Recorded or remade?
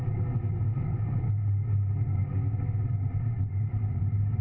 recorded